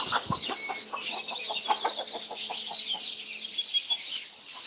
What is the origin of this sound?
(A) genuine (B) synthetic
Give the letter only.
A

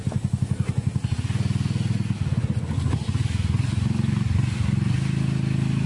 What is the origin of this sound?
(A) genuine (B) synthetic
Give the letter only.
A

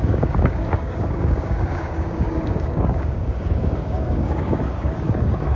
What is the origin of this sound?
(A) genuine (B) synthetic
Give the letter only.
B